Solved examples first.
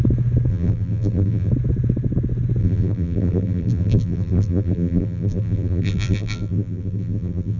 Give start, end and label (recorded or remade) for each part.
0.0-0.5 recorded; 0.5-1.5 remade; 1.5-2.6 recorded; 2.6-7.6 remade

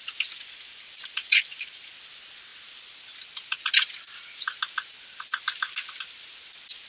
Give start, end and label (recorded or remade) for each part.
0.0-2.5 remade; 2.5-6.9 recorded

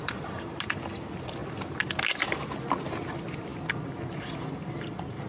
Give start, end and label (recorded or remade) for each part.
0.0-5.3 recorded